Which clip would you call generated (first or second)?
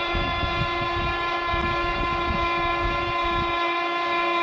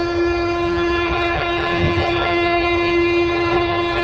second